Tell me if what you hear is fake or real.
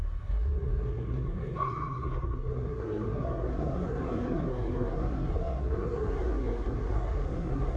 fake